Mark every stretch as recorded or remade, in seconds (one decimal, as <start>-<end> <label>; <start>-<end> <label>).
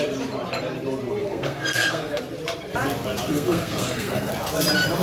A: 0.0-1.2 recorded; 1.2-2.2 remade; 2.2-3.3 recorded; 3.3-4.3 remade; 4.3-5.0 recorded